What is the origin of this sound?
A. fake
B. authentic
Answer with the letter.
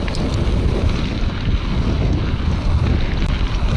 B